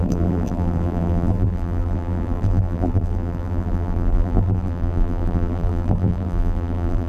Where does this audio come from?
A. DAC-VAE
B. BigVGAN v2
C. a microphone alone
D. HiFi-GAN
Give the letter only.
B